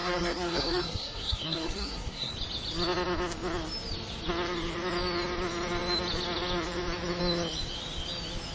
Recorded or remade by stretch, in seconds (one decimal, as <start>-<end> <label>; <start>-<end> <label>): 0.0-2.3 remade; 2.3-8.5 recorded